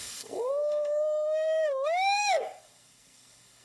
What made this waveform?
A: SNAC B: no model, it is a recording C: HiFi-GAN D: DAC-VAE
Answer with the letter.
A